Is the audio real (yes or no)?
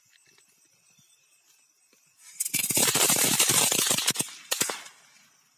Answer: yes